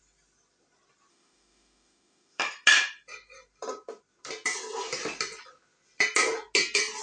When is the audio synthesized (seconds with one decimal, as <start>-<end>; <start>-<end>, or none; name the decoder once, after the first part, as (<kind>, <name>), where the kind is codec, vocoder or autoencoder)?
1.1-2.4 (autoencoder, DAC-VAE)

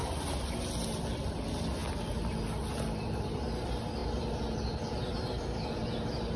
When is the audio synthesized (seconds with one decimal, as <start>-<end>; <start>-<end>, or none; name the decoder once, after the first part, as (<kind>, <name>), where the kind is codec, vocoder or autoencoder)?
none

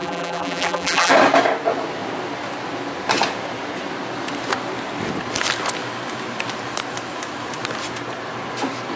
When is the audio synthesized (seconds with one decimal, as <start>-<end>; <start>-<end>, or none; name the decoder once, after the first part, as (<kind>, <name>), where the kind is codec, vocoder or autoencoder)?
0.0-1.1 (vocoder, BigVGAN v2)

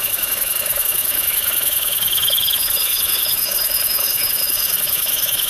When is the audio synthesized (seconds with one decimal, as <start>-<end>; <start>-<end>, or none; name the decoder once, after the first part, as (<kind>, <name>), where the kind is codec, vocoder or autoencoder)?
0.0-5.5 (autoencoder, DAC-VAE)

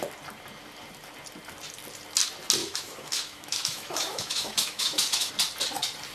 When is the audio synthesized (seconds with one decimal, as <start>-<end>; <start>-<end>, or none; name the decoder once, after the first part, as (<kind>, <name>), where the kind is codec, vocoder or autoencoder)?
2.6-5.3 (autoencoder, DAC-VAE)